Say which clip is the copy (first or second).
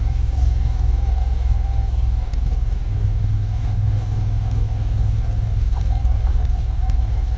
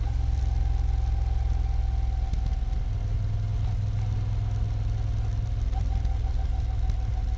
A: first